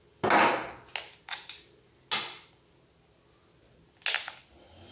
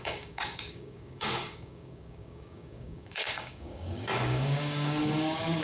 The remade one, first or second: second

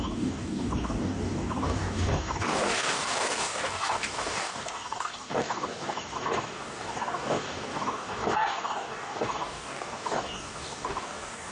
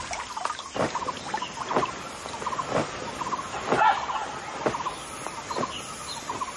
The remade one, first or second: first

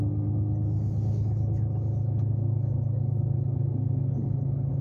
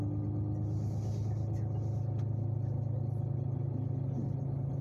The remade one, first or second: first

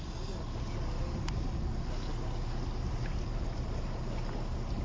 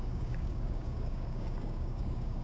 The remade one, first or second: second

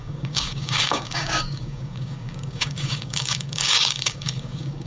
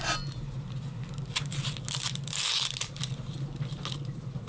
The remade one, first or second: first